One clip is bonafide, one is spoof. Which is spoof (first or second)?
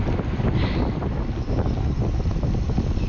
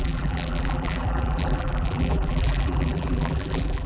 second